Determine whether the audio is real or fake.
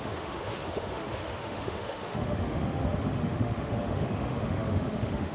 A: fake